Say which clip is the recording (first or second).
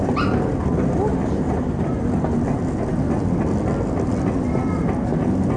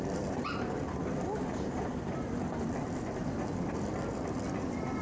first